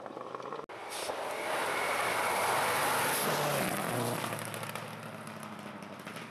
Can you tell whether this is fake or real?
real